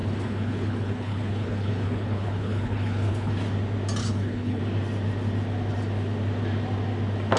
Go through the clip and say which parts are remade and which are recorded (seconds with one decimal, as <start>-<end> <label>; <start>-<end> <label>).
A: 0.0-3.3 remade; 3.3-4.0 recorded; 4.0-4.6 remade; 4.6-7.4 recorded